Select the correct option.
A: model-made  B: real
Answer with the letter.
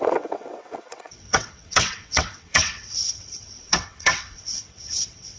A